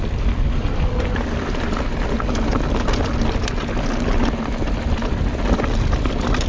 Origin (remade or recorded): recorded